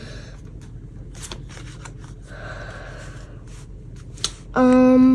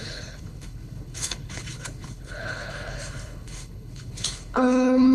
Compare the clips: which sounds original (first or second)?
first